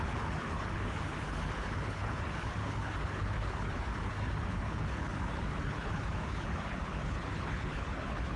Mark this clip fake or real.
fake